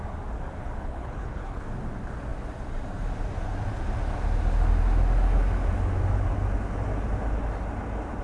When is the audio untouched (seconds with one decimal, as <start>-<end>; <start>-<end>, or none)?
0.0-0.6; 1.6-8.2